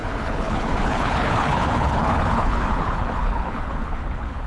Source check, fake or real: fake